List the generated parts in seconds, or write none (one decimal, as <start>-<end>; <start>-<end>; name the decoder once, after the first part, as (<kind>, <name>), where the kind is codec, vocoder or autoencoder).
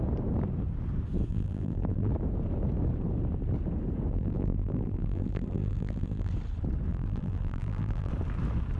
1.3-2.1 (vocoder, BigVGAN v2); 4.1-6.3; 6.9-8.1